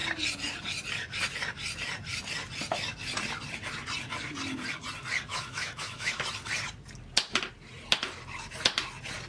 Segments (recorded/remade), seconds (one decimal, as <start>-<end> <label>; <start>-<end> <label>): 0.0-5.3 recorded; 5.3-6.2 remade; 6.2-9.3 recorded